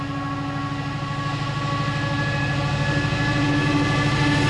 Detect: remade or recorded recorded